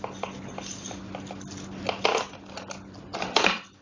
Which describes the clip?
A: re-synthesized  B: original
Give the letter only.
B